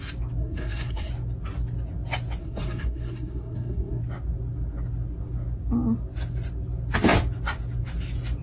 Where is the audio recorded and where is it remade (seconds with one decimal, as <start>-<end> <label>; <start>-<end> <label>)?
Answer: 0.0-0.4 recorded; 0.4-1.1 remade; 1.1-2.4 recorded; 2.4-4.0 remade; 4.0-8.4 recorded